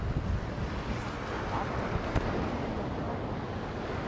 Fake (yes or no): no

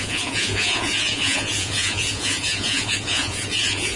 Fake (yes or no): yes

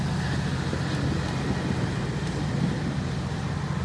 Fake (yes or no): no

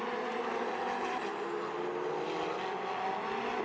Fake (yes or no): no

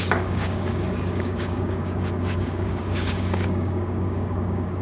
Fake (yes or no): yes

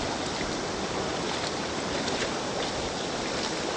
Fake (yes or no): no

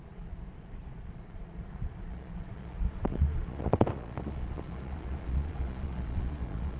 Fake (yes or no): yes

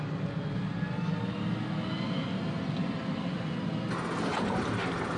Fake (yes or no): no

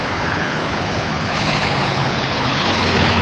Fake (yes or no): yes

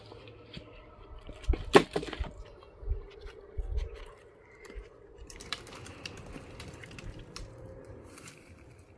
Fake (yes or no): yes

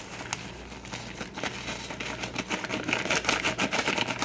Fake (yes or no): no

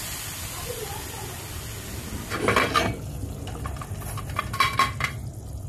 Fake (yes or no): no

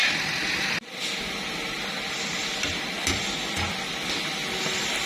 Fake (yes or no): no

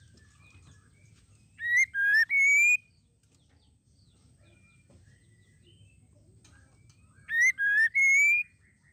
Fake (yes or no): no